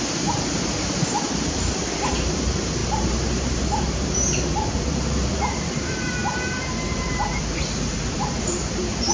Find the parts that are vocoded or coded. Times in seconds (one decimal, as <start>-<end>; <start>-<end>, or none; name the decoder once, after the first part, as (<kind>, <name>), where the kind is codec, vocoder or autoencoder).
0.0-9.1 (vocoder, BigVGAN v2)